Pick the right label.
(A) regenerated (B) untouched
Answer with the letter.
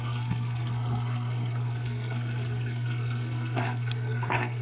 A